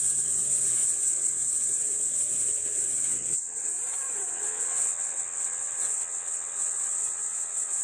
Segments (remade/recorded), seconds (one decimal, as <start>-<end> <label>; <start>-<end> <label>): 0.0-3.7 remade; 3.7-4.3 recorded; 4.3-7.8 remade